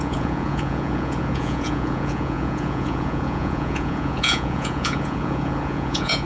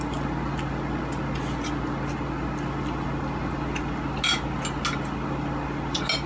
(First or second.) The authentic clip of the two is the second